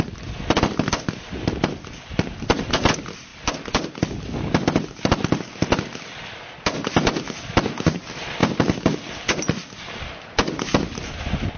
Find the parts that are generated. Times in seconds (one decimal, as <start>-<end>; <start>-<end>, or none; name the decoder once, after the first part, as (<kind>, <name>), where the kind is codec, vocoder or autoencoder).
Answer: 8.4-9.1 (vocoder, BigVGAN v2)